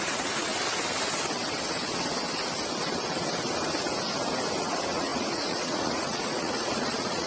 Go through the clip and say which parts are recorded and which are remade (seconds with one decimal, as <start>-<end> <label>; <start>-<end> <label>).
0.0-0.5 remade; 0.5-4.6 recorded; 4.6-7.3 remade